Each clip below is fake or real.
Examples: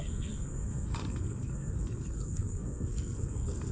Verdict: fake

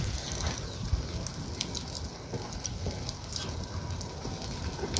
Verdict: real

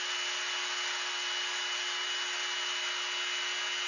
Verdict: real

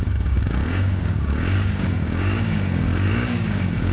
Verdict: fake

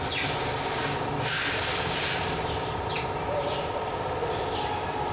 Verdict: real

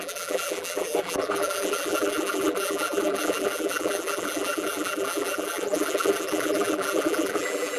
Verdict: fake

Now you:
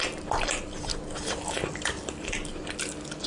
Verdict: real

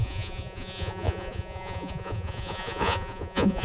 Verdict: fake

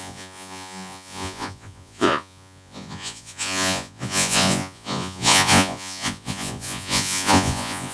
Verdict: fake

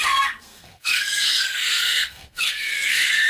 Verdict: fake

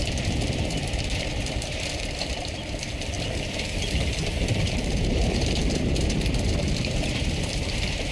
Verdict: fake